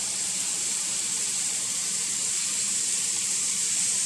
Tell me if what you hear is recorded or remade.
remade